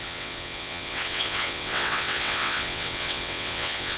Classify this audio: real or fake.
fake